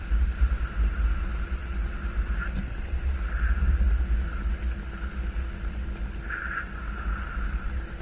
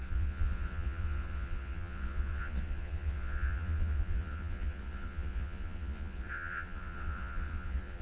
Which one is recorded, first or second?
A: first